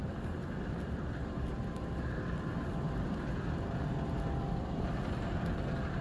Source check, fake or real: real